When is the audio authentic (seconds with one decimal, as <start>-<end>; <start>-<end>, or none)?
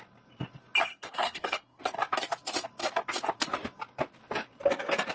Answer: 0.0-0.9; 1.8-5.1